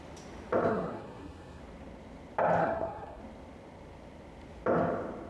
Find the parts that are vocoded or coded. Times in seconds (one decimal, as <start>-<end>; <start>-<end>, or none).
0.7-1.6; 2.6-3.2